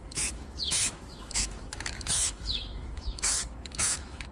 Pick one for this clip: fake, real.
fake